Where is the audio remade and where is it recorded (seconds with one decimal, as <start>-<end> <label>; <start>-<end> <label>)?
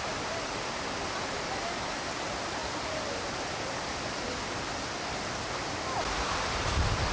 0.0-2.6 recorded; 2.6-4.7 remade; 4.7-7.1 recorded